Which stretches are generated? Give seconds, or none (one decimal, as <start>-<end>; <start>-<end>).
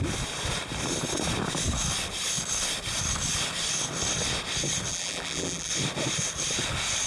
4.9-5.7